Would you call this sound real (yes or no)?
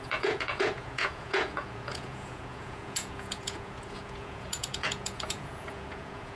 no